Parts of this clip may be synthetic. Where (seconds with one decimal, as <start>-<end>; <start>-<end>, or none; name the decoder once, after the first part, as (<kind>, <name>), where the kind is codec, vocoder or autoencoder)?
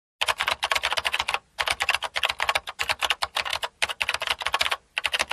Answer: none